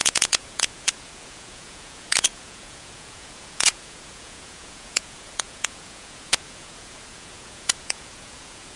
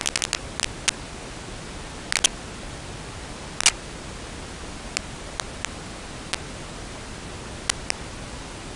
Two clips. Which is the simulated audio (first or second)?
first